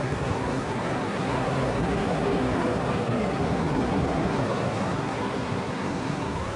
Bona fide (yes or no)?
no